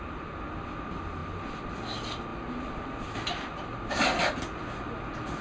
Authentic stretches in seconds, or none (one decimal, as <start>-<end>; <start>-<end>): 0.0-1.2; 1.7-2.3; 3.3-3.7; 4.3-5.4

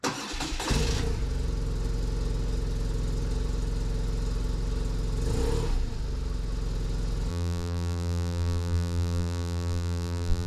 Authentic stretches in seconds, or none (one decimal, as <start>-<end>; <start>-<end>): 0.0-7.3

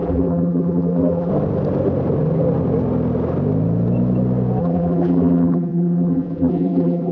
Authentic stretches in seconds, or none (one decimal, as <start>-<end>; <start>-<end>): 1.3-4.6

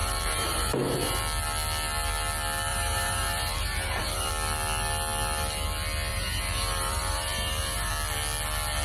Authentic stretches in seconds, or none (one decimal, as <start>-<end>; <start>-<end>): 1.2-2.7; 4.3-6.1; 7.9-8.8

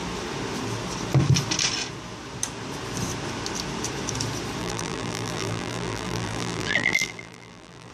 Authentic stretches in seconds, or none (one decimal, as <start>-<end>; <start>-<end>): 0.0-4.6

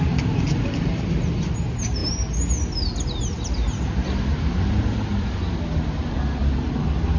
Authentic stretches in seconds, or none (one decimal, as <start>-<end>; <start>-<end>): 0.0-7.2